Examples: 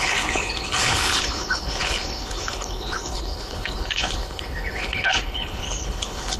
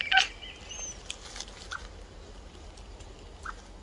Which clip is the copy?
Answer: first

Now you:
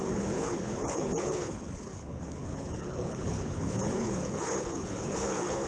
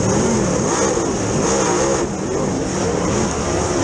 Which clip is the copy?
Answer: first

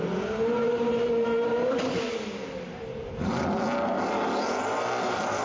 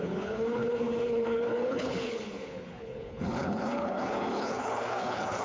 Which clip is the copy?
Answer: second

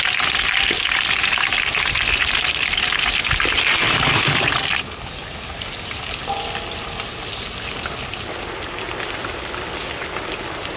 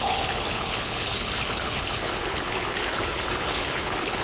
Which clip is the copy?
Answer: second